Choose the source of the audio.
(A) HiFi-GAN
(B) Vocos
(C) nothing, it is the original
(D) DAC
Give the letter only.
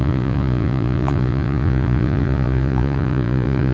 B